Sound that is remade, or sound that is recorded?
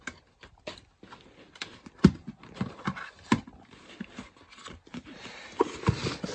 recorded